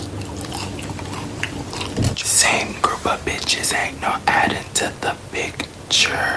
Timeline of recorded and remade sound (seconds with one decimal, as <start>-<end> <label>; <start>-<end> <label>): 0.0-6.4 recorded